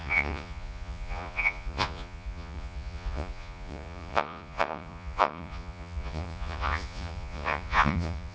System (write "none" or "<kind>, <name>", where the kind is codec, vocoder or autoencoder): vocoder, Vocos